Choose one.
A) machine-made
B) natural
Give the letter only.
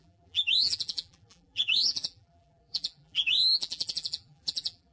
A